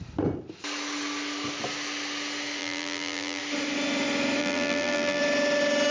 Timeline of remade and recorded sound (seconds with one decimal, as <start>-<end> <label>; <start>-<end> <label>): 0.0-2.6 recorded; 2.6-3.4 remade; 3.4-4.4 recorded; 4.4-5.2 remade; 5.2-5.9 recorded

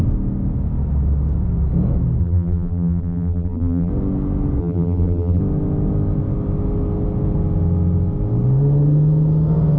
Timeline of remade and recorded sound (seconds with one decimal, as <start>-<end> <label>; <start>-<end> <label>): 0.0-2.2 recorded; 2.2-3.9 remade; 3.9-4.6 recorded; 4.6-5.4 remade; 5.4-9.8 recorded

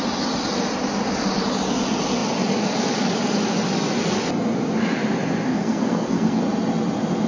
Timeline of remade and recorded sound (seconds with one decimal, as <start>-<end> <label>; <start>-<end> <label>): 0.0-5.5 recorded; 5.5-6.4 remade; 6.4-7.3 recorded

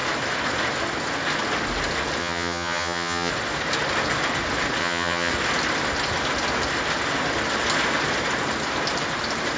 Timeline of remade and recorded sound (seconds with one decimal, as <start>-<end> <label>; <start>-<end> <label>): 0.0-2.2 recorded; 2.2-3.3 remade; 3.3-4.8 recorded; 4.8-5.3 remade; 5.3-9.6 recorded

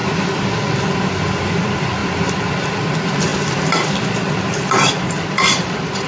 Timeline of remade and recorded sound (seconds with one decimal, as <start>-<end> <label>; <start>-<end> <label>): 0.0-1.4 recorded; 1.4-2.0 remade; 2.0-2.5 recorded; 2.5-6.1 remade

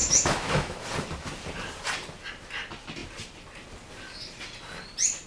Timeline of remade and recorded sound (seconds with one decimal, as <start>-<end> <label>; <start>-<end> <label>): 0.0-0.8 remade; 0.8-5.3 recorded

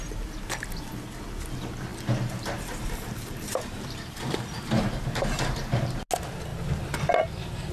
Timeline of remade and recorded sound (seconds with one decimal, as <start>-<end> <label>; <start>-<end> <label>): 0.0-1.9 recorded; 1.9-5.9 remade; 5.9-7.7 recorded